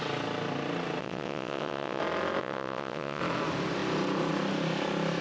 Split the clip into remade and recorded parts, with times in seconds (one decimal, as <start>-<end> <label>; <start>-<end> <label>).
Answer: 0.0-1.0 recorded; 1.0-2.0 remade; 2.0-2.4 recorded; 2.4-3.2 remade; 3.2-5.2 recorded